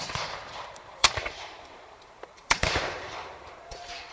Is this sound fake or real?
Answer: fake